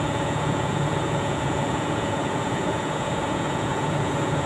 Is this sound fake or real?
fake